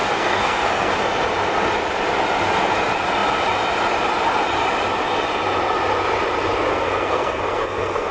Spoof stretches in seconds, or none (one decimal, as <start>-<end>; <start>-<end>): 0.0-0.9; 6.7-8.1